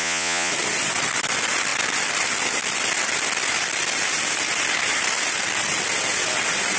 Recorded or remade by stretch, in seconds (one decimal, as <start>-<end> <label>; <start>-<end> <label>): 0.0-0.5 remade; 0.5-6.8 recorded